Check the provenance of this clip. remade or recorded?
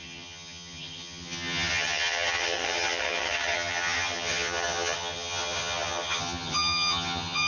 remade